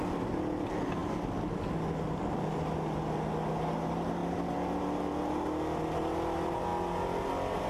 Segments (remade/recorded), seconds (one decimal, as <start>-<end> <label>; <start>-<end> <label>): 0.0-7.7 recorded